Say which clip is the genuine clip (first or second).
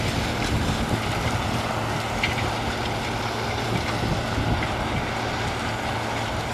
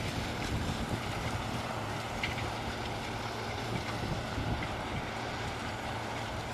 first